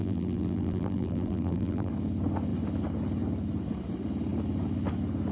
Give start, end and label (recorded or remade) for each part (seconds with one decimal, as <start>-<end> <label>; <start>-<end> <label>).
0.0-1.9 remade; 1.9-5.3 recorded